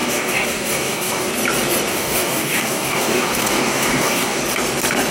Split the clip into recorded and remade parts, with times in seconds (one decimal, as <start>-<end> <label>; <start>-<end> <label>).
0.0-1.3 remade; 1.3-1.9 recorded; 1.9-4.4 remade; 4.4-5.1 recorded